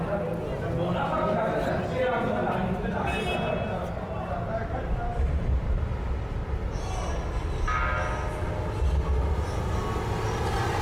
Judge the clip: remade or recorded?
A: recorded